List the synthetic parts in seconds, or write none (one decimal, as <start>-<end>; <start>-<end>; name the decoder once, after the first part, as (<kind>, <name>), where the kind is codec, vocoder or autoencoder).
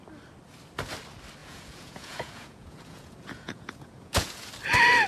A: 1.4-4.5 (vocoder, Vocos)